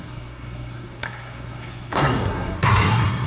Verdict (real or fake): fake